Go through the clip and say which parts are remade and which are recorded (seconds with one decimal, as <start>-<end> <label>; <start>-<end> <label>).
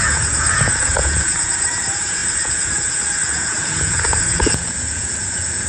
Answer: 0.0-5.7 remade